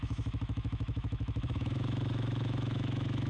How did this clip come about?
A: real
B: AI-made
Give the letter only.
B